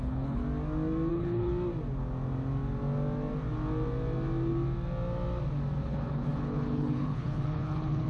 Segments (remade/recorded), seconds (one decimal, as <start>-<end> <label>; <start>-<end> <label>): 0.0-0.4 remade; 0.4-1.1 recorded; 1.1-1.5 remade; 1.5-5.8 recorded; 5.8-8.1 remade